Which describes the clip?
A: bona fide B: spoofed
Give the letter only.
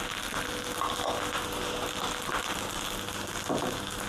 A